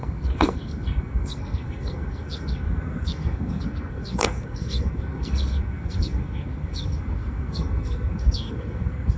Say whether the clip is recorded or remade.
remade